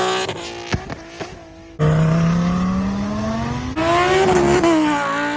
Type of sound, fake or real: real